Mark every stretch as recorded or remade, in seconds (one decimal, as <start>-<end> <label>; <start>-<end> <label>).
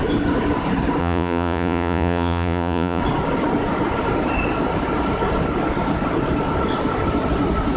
0.0-1.0 recorded; 1.0-3.0 remade; 3.0-7.8 recorded